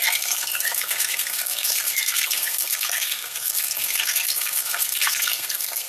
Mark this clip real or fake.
fake